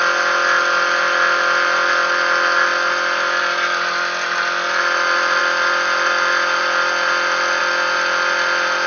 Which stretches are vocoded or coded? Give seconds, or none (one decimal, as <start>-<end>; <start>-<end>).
none

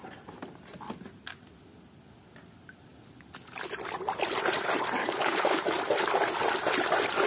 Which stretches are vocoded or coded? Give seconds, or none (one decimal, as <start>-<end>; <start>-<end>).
5.0-5.6

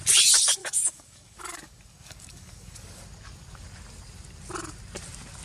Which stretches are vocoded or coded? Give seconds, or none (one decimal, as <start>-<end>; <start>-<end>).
0.6-3.0

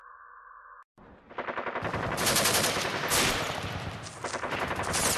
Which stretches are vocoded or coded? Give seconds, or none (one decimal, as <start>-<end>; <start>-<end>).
none